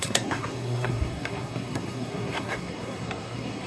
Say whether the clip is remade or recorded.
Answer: remade